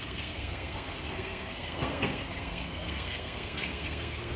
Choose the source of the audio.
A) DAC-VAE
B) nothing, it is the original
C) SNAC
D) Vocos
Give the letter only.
C